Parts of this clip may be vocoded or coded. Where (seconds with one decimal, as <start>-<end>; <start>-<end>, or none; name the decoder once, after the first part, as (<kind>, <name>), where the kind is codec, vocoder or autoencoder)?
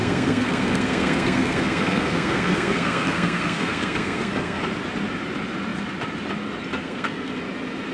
0.0-4.6 (codec, SNAC); 6.7-7.3